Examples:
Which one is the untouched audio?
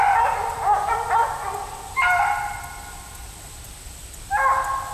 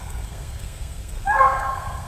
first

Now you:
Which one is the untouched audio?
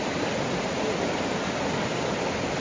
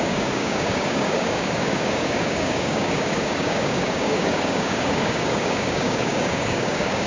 first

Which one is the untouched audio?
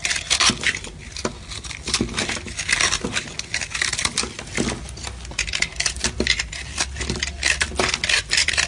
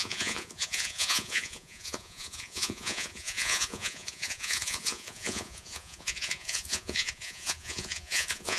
first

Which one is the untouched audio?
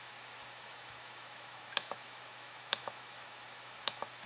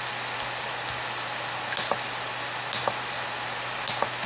second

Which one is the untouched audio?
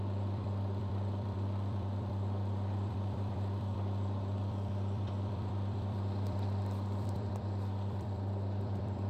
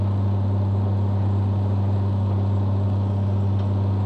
second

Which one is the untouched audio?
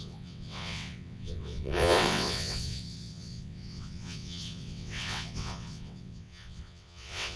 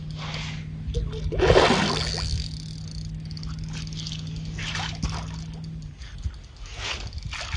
second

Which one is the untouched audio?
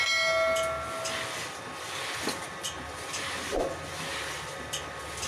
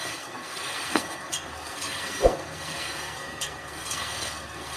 first